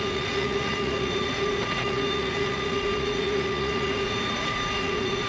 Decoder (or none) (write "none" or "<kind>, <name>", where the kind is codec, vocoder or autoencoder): vocoder, Vocos